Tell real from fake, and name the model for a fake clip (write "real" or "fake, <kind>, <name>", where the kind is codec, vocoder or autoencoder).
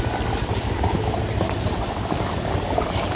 real